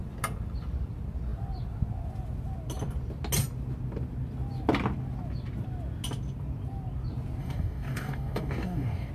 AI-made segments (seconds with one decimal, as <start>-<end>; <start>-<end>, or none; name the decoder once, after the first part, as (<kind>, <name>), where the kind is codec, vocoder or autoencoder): 7.4-9.1 (codec, DAC)